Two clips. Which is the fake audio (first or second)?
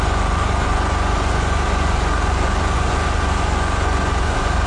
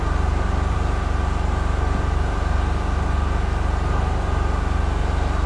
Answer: first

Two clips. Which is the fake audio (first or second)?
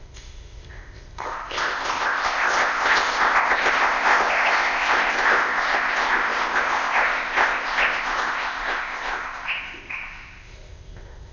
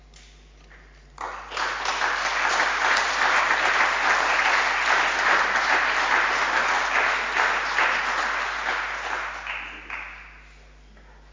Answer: first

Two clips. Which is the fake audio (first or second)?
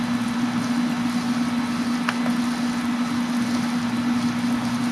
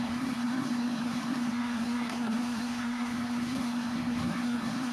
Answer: second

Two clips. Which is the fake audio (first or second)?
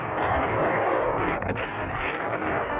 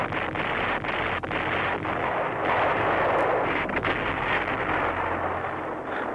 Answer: first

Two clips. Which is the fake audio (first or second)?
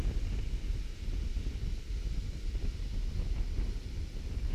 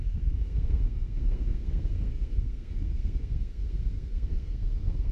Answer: second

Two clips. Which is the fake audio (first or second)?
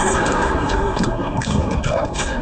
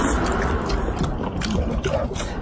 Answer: first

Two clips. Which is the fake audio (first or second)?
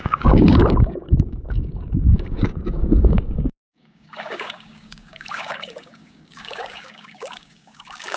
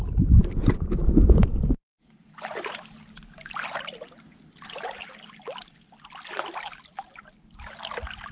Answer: first